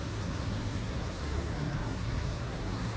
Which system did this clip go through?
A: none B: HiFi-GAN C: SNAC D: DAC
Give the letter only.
C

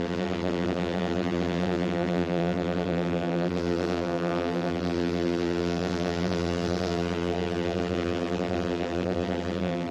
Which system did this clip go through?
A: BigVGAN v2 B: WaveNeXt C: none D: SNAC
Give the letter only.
A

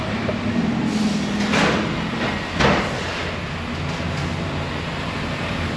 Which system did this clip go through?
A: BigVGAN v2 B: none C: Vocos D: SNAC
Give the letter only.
B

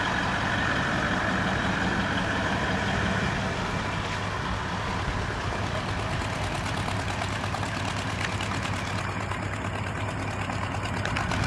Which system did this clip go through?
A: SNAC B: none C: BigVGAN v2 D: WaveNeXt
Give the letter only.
B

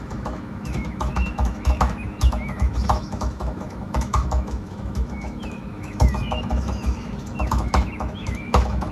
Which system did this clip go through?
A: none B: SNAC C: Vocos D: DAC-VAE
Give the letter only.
D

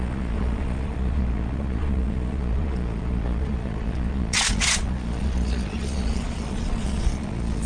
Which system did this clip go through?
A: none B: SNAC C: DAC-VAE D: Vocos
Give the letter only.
D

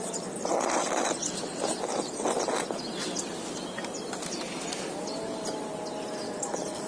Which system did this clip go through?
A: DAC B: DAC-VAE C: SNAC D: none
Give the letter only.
D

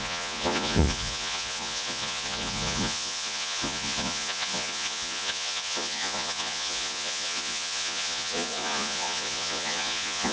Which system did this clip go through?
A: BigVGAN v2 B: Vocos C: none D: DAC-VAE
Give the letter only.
B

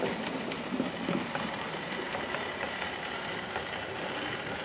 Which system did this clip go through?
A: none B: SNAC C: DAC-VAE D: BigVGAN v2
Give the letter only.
A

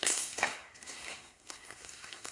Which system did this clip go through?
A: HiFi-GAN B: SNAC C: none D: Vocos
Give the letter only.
B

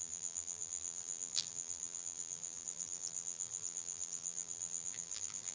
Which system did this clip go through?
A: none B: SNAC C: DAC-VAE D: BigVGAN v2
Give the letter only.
D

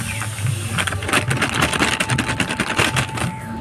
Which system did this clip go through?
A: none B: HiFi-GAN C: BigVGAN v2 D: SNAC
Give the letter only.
A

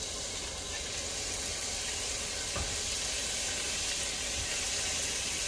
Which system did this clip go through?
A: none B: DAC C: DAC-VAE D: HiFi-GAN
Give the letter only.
A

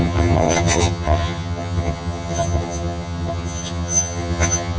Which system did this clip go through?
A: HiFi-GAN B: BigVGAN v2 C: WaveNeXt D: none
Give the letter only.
A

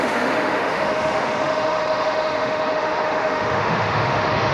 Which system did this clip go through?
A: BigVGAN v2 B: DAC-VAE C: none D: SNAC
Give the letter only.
B